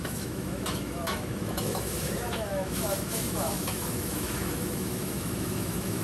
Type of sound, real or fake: fake